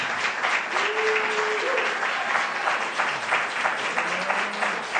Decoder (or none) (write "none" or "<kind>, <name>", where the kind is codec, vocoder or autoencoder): none